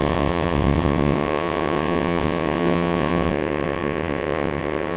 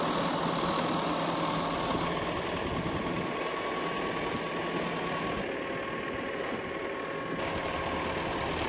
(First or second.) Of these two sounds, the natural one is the second